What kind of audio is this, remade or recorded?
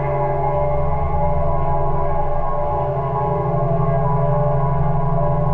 recorded